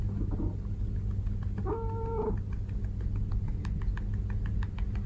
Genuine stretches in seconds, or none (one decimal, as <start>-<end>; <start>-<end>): 0.0-5.1